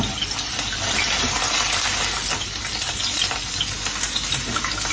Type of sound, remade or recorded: recorded